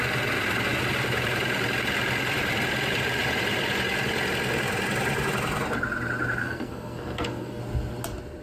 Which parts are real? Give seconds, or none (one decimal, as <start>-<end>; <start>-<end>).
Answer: 0.0-6.4; 7.6-8.4